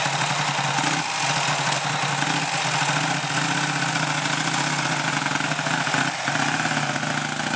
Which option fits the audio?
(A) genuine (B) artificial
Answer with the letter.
A